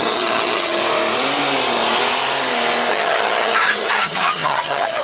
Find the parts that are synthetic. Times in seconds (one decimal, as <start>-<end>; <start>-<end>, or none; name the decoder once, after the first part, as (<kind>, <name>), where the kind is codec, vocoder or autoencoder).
0.0-0.8 (vocoder, HiFi-GAN); 2.9-5.0